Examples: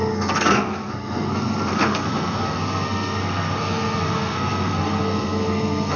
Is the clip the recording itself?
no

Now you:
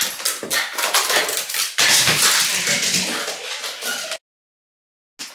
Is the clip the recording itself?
yes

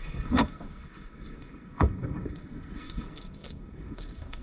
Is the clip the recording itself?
no